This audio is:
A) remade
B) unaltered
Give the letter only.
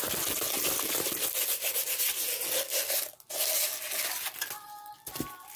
B